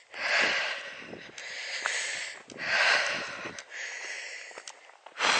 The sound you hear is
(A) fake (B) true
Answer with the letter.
B